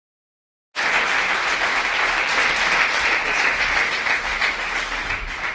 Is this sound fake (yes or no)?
no